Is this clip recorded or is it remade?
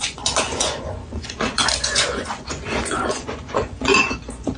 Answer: remade